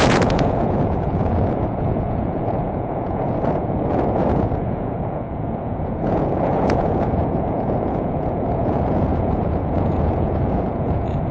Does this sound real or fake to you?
fake